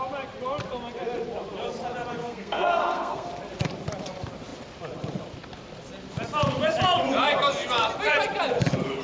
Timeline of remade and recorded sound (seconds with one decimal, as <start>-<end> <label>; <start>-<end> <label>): 0.0-2.2 recorded; 2.2-3.3 remade; 3.3-9.0 recorded